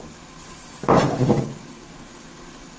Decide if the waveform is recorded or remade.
recorded